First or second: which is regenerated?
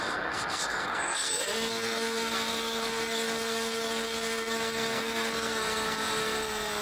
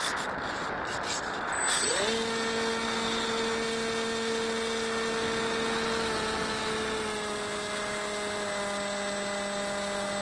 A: first